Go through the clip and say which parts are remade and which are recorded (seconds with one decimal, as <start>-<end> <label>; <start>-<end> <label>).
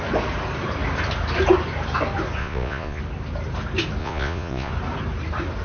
0.0-2.4 recorded; 2.4-3.0 remade; 3.0-4.0 recorded; 4.0-4.7 remade; 4.7-5.6 recorded